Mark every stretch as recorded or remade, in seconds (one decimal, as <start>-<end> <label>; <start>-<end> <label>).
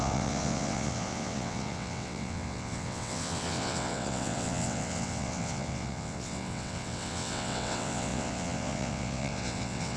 0.0-10.0 remade